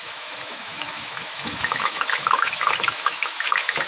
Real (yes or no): no